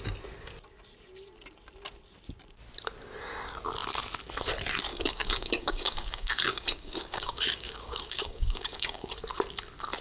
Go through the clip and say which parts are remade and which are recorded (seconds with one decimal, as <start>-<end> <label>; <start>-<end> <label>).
0.0-4.9 recorded; 4.9-9.1 remade; 9.1-10.0 recorded